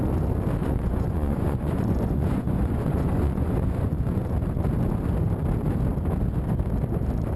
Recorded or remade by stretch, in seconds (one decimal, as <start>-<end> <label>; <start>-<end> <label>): 0.0-0.6 recorded; 0.6-4.3 remade; 4.3-7.4 recorded